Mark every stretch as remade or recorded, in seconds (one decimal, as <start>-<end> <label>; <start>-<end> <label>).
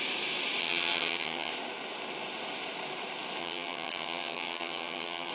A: 0.0-0.6 recorded; 0.6-1.5 remade; 1.5-3.4 recorded; 3.4-5.3 remade